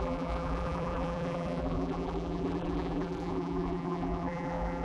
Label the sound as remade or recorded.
remade